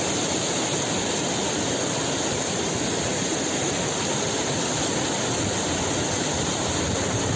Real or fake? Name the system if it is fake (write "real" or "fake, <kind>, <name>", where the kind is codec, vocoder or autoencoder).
real